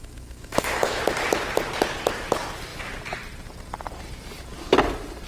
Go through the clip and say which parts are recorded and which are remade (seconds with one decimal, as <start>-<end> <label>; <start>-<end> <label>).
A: 0.0-1.0 remade; 1.0-5.3 recorded